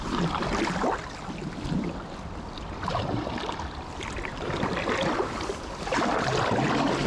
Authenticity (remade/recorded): recorded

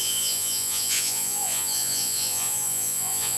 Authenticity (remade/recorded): remade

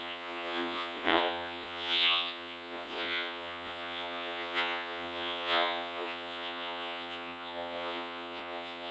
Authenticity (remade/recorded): remade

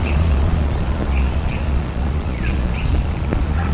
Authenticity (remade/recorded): remade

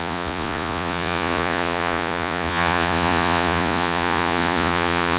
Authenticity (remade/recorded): remade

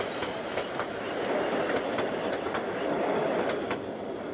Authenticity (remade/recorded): recorded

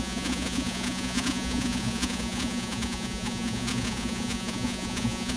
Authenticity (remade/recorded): remade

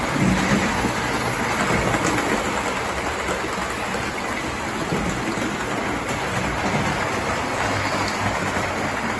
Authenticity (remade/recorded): recorded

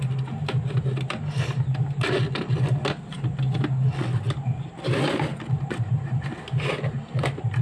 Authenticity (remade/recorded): recorded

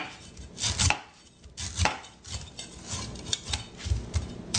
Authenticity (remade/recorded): recorded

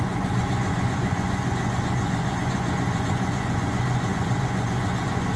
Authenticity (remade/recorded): remade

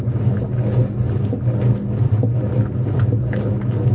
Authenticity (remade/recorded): recorded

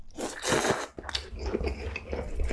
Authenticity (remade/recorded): recorded